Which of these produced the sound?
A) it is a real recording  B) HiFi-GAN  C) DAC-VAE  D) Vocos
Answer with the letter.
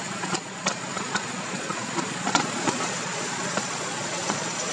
D